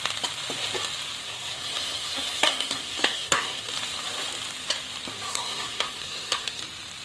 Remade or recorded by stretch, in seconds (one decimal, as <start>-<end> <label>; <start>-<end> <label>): 0.0-1.2 recorded; 1.2-3.7 remade; 3.7-5.3 recorded; 5.3-6.6 remade; 6.6-7.0 recorded